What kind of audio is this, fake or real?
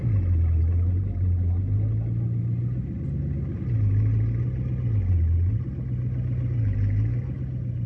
real